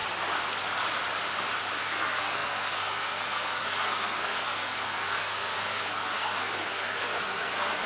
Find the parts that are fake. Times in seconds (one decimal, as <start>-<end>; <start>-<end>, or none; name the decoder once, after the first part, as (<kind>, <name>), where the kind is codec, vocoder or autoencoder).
1.8-7.9 (codec, SNAC)